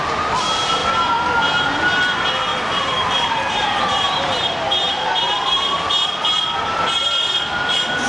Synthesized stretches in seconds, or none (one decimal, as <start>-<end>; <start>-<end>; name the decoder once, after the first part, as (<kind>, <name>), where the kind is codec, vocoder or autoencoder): 2.5-5.2 (vocoder, BigVGAN v2)